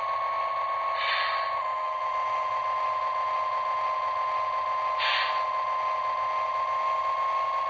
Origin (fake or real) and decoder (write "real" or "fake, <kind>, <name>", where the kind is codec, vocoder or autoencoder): real